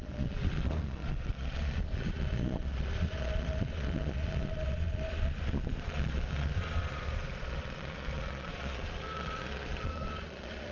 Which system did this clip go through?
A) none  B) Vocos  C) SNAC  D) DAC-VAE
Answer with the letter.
B